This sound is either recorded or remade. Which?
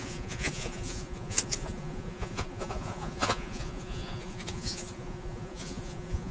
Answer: remade